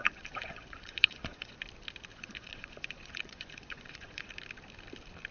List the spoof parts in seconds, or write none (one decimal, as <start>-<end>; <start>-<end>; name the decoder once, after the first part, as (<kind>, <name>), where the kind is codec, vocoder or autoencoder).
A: 0.0-1.6 (vocoder, Vocos); 2.1-4.3